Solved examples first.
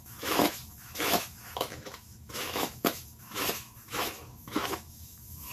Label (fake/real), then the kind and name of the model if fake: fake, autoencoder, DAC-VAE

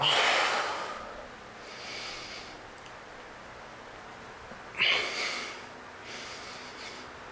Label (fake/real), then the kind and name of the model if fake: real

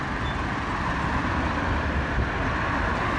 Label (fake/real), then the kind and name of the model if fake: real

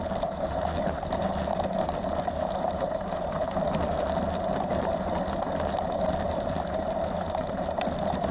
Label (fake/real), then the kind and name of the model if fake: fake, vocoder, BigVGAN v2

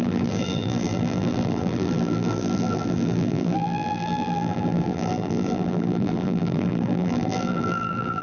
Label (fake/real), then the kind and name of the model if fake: fake, vocoder, BigVGAN v2